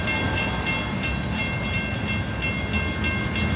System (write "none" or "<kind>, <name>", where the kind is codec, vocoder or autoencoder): none